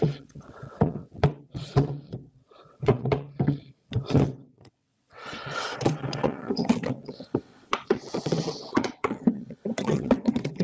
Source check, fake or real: fake